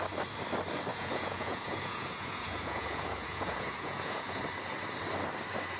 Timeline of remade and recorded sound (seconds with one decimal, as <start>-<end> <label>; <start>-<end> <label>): 0.0-0.9 recorded; 0.9-4.4 remade; 4.4-5.8 recorded